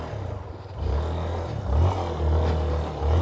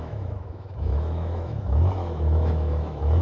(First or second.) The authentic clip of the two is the first